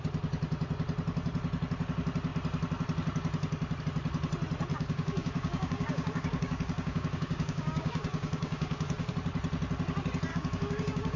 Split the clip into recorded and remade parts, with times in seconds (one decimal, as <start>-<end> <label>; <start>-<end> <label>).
0.0-4.7 recorded; 4.7-9.1 remade; 9.1-10.3 recorded; 10.3-11.2 remade